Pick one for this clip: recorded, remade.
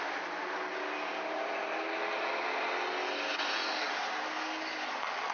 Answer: recorded